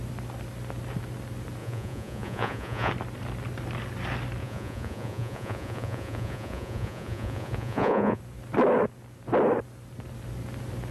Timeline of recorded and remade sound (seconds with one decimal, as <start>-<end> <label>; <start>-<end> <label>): 0.0-1.6 recorded; 1.6-2.9 remade; 2.9-4.4 recorded; 4.4-8.2 remade; 8.2-10.9 recorded

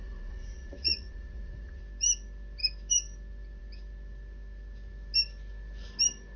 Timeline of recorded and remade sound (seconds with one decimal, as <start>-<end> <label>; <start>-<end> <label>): 0.0-1.8 remade; 1.8-6.4 recorded

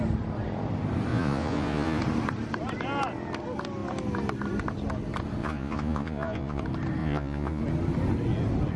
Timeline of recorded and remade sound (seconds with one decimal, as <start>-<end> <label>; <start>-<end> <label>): 0.0-1.1 recorded; 1.1-2.0 remade; 2.0-5.4 recorded; 5.4-6.6 remade; 6.6-7.0 recorded; 7.0-7.6 remade; 7.6-8.8 recorded

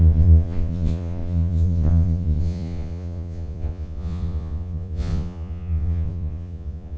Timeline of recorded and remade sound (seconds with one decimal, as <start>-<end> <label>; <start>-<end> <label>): 0.0-7.0 remade

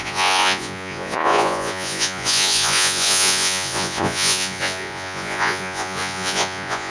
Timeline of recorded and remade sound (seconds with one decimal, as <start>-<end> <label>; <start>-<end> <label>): 0.0-6.9 remade

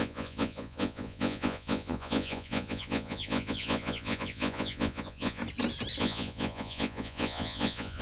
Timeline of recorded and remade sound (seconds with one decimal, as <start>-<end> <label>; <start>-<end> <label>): 0.0-5.4 remade; 5.4-6.0 recorded; 6.0-8.0 remade

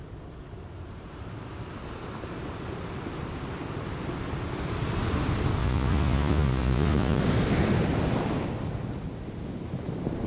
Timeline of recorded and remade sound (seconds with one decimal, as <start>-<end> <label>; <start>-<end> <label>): 0.0-5.6 recorded; 5.6-7.2 remade; 7.2-10.3 recorded

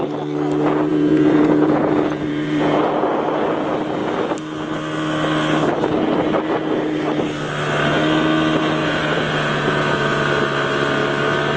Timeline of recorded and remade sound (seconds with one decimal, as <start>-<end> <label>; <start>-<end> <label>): 0.0-0.9 recorded; 0.9-2.8 remade; 2.8-8.8 recorded; 8.8-10.2 remade; 10.2-11.6 recorded